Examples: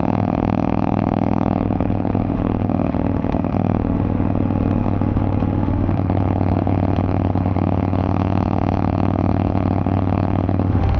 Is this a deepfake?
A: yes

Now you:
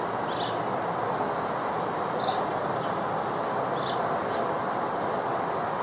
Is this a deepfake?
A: no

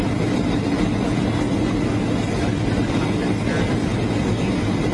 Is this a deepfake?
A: no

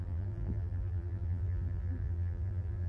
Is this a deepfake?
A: yes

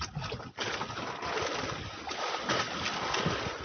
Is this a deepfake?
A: no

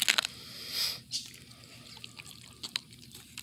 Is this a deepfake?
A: no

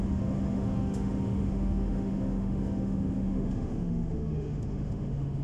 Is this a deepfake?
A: yes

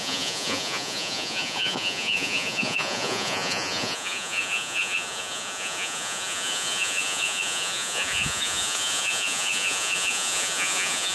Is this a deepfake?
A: yes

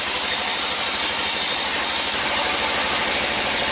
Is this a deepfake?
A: no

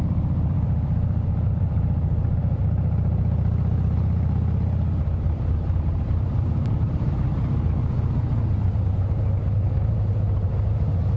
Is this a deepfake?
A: no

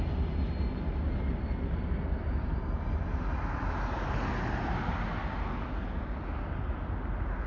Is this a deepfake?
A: no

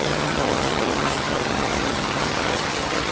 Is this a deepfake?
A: yes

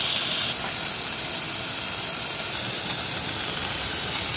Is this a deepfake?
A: no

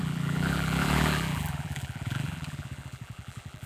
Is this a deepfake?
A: yes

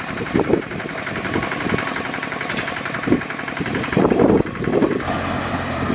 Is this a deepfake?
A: yes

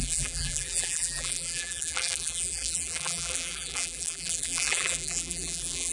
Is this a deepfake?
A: yes